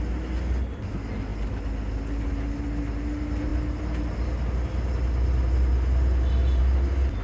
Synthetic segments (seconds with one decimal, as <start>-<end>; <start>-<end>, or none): none